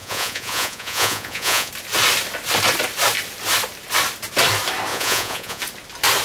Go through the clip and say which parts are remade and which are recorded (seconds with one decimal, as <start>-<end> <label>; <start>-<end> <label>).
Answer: 0.0-1.7 remade; 1.7-4.9 recorded; 4.9-5.6 remade; 5.6-6.2 recorded